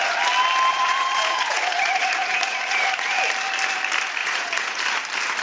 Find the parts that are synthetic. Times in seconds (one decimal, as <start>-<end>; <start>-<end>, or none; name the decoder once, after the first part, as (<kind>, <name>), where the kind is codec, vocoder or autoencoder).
0.7-3.2 (vocoder, Vocos); 4.2-4.8